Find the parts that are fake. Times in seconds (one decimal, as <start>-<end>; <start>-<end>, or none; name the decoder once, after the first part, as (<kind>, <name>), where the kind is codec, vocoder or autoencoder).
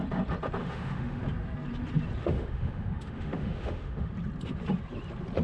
0.6-1.2 (autoencoder, DAC-VAE); 2.2-4.1